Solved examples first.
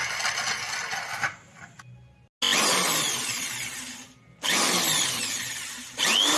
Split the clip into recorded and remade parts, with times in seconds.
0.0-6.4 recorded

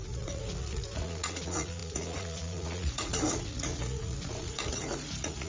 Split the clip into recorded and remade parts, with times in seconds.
0.0-5.5 remade